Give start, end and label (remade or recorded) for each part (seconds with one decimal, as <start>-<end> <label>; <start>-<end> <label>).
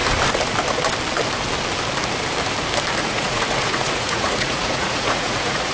0.0-3.0 recorded; 3.0-5.7 remade